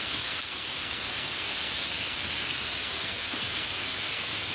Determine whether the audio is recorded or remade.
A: remade